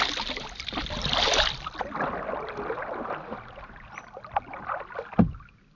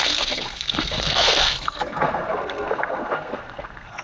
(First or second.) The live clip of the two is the first